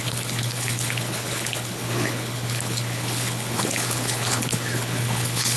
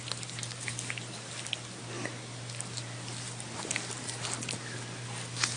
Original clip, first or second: second